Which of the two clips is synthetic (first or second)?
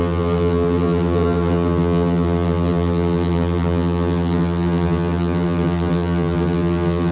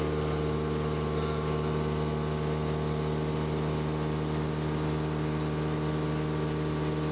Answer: first